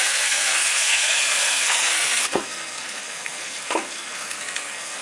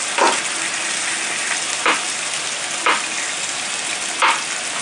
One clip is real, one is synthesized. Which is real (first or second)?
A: second